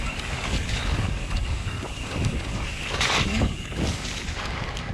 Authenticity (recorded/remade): remade